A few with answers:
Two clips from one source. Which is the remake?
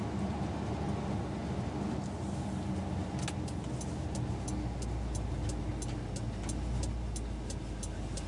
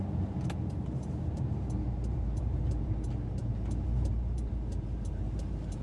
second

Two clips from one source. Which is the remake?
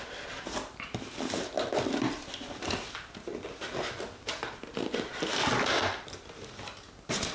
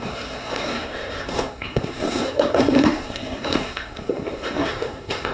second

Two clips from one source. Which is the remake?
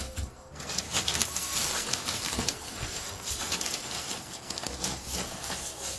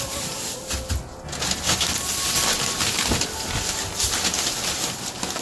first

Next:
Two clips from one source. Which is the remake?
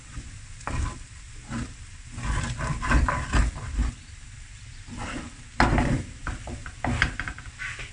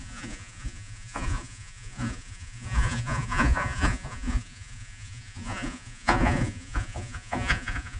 second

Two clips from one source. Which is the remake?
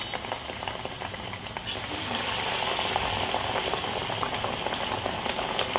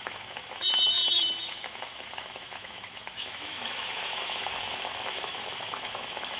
second